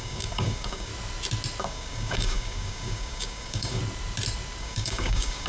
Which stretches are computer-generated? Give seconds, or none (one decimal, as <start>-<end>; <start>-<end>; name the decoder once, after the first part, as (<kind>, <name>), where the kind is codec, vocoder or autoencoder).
0.0-0.9 (codec, DAC); 1.6-3.8; 4.6-5.5